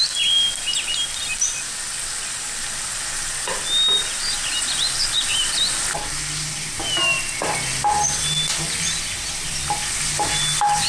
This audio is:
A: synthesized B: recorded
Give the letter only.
B